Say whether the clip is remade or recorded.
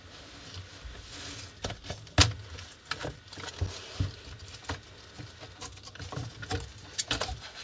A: recorded